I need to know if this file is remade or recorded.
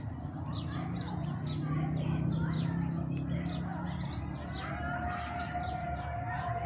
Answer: recorded